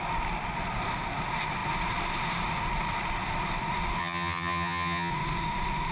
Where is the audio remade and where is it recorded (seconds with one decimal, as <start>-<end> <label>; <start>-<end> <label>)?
0.0-4.0 recorded; 4.0-5.1 remade; 5.1-5.9 recorded